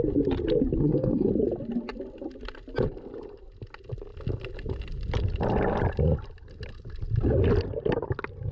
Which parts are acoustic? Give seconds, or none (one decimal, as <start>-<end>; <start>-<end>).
0.0-0.8; 1.3-8.5